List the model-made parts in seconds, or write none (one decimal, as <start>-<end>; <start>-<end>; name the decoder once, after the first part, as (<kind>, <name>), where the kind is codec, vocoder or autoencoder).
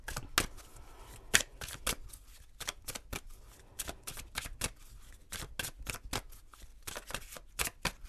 6.7-8.1 (vocoder, BigVGAN v2)